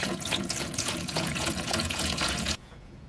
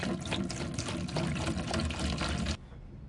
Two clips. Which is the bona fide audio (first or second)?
second